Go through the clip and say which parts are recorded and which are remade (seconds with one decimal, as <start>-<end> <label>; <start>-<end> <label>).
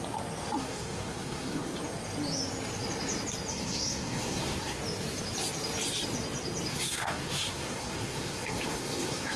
0.0-0.6 recorded; 0.6-1.8 remade; 1.8-3.5 recorded; 3.5-4.8 remade; 4.8-6.7 recorded; 6.7-9.4 remade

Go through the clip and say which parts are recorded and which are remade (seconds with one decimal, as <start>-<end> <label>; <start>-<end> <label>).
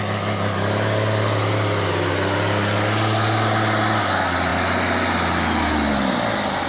0.0-6.7 recorded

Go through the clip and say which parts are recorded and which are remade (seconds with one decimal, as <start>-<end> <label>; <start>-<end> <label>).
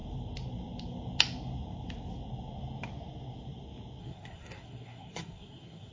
0.0-4.0 recorded; 4.0-5.9 remade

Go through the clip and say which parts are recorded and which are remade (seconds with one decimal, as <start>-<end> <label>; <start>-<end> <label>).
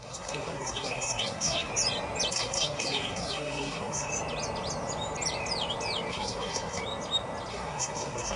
0.0-1.7 remade; 1.7-2.3 recorded; 2.3-4.1 remade; 4.1-6.1 recorded; 6.1-6.8 remade; 6.8-7.5 recorded; 7.5-8.4 remade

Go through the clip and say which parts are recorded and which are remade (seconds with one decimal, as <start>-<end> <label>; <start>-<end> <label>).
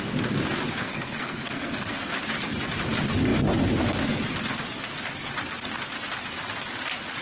0.0-0.8 recorded; 0.8-2.1 remade; 2.1-7.2 recorded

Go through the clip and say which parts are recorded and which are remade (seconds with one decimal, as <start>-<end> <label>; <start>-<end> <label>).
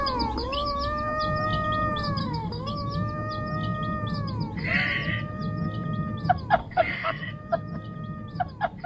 0.0-2.2 recorded; 2.2-2.7 remade; 2.7-6.6 recorded; 6.6-7.3 remade; 7.3-8.9 recorded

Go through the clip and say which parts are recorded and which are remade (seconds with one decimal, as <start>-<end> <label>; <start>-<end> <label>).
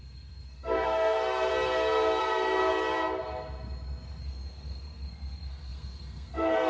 0.0-1.5 remade; 1.5-2.2 recorded; 2.2-2.6 remade; 2.6-4.2 recorded; 4.2-6.7 remade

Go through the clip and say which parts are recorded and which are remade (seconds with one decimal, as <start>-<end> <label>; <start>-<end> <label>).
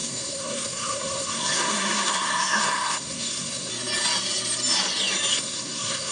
0.0-3.7 remade; 3.7-5.3 recorded; 5.3-6.1 remade